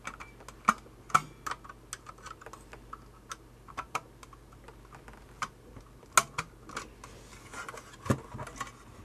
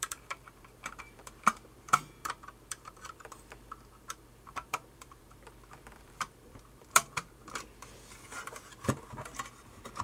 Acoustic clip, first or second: first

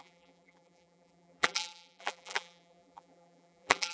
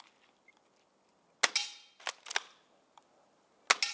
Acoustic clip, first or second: second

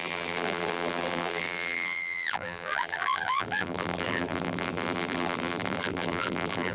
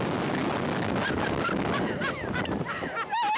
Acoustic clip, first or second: second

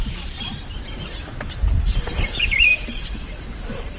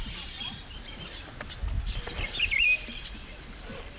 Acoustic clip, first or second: second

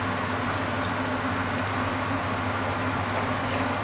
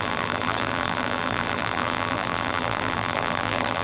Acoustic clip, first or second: first